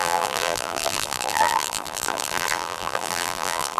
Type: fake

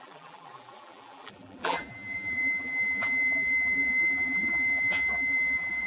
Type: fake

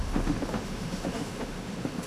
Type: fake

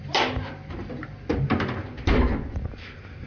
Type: real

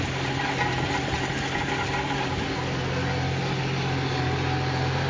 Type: real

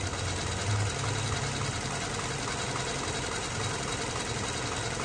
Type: real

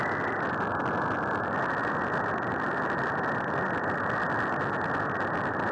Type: real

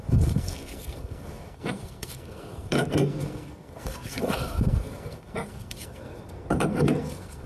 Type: fake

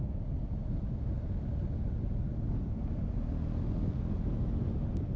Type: real